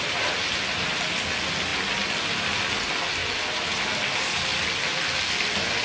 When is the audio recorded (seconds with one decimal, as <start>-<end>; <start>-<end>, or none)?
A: 0.0-5.8